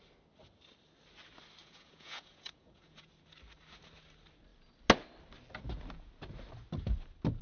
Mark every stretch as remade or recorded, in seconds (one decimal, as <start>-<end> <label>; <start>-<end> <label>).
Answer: 0.0-1.6 recorded; 1.6-3.1 remade; 3.1-7.4 recorded